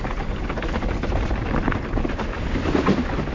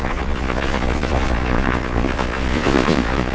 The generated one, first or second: second